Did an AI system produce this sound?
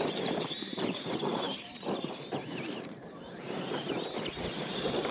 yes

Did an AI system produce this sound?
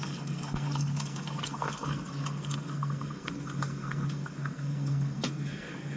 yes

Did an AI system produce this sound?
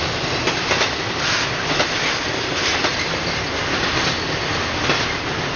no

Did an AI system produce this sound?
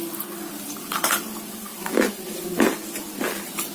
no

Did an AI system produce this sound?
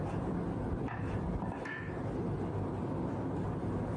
no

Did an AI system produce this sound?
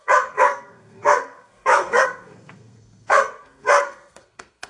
yes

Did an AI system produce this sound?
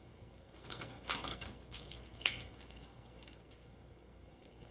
yes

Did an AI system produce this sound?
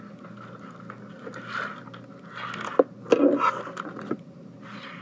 no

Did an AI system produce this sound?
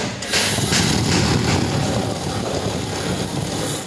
no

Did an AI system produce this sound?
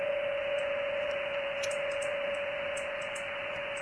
yes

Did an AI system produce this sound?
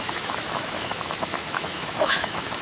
yes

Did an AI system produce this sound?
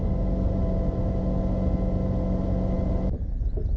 no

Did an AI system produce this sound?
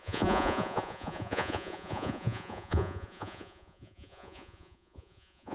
yes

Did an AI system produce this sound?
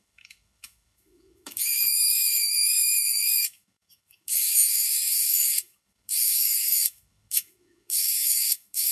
yes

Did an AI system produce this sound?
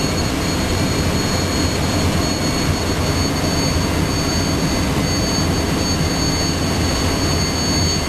no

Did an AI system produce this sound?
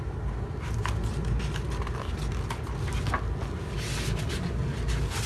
no